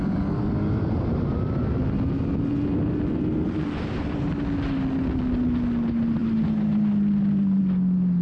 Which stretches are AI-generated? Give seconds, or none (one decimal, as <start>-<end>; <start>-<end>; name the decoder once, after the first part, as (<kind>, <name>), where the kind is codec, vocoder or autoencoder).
none